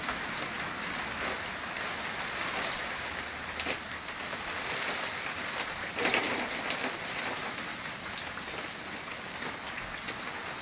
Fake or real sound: real